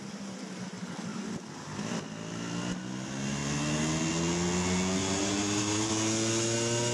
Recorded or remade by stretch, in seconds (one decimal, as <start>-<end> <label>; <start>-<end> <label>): 0.0-5.0 recorded; 5.0-5.9 remade; 5.9-6.9 recorded